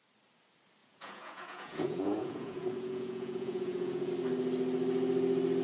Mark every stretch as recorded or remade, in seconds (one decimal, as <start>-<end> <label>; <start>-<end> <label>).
0.0-0.8 recorded; 0.8-4.1 remade; 4.1-5.6 recorded